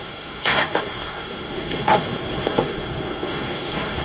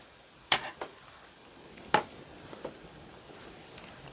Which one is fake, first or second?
first